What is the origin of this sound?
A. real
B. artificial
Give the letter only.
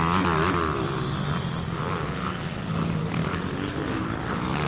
A